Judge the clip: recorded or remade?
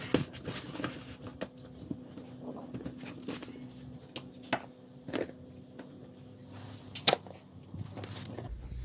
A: recorded